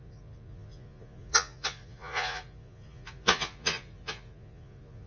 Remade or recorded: remade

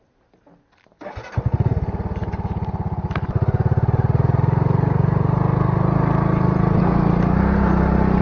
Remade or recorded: recorded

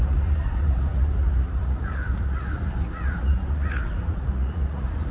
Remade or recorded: remade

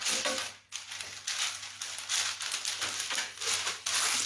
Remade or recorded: recorded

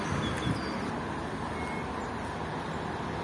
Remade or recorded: recorded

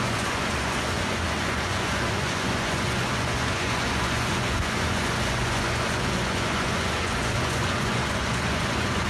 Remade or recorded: remade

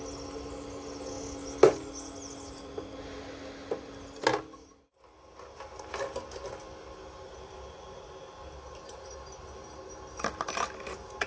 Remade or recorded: recorded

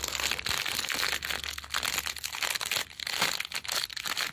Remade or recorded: recorded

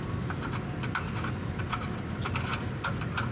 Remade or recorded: recorded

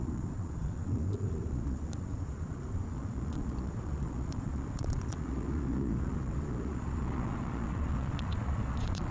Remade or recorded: remade